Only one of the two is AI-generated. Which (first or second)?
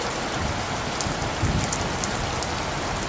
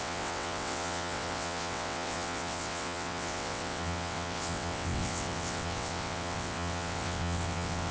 second